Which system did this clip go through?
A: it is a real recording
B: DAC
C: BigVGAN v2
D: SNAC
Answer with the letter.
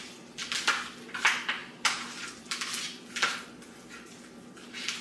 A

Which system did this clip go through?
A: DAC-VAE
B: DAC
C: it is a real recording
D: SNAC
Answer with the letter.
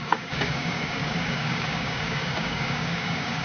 B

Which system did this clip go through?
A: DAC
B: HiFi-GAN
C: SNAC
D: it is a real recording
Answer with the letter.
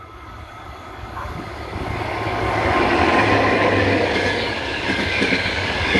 A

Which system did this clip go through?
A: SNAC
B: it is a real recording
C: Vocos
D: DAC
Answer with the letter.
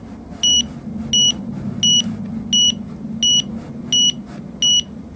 B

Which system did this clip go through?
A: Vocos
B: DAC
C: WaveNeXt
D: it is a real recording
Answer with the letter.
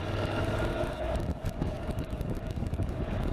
B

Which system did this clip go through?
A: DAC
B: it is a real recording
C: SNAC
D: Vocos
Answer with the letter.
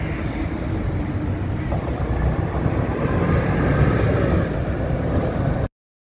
B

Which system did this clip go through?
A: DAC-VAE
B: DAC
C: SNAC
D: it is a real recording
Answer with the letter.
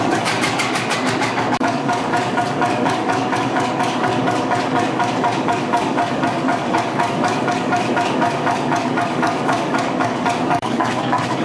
B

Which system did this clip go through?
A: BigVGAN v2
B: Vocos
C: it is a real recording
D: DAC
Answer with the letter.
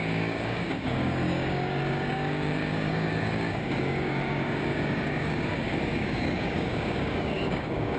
D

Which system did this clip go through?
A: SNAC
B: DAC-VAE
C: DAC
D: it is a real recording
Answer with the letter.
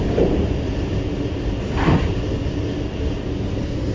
D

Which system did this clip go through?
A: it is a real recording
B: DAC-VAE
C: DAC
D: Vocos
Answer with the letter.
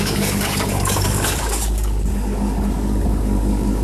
C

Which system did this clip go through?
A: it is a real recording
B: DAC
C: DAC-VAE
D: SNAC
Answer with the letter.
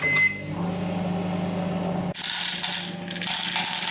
A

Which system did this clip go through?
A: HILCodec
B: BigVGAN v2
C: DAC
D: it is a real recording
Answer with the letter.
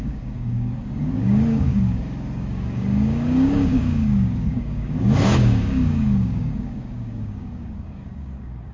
C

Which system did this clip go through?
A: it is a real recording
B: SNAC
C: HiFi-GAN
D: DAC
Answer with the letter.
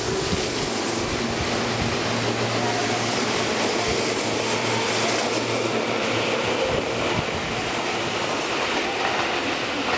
A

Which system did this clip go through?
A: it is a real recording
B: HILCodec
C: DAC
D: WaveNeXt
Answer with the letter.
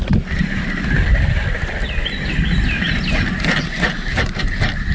A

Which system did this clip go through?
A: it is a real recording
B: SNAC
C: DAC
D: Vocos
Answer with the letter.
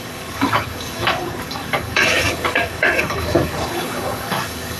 C